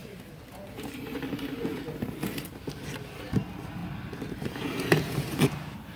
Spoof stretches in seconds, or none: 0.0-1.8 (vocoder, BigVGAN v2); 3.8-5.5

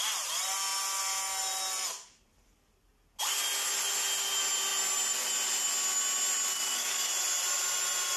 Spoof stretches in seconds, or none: 6.5-7.1 (codec, DAC)

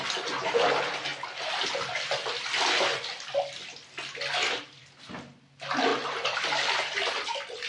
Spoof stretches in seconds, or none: 5.9-6.9 (vocoder, BigVGAN v2)